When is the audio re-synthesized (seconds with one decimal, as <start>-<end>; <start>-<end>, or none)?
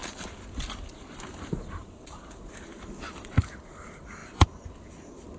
none